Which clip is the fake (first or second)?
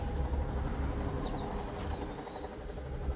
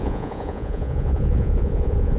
second